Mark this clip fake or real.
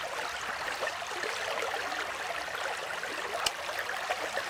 real